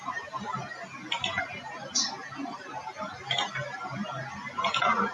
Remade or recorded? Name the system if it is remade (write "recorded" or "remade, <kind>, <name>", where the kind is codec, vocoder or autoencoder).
recorded